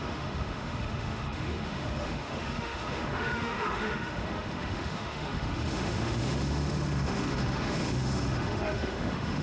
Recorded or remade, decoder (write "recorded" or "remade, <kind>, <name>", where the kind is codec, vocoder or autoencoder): remade, autoencoder, DAC-VAE